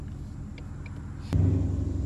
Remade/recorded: recorded